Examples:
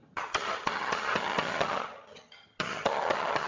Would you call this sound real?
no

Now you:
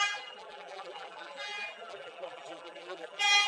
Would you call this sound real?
no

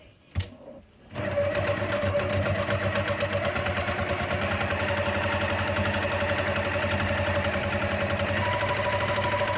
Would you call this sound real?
yes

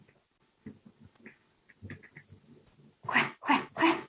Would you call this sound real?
yes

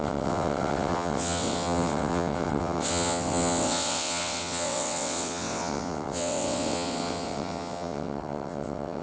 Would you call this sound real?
no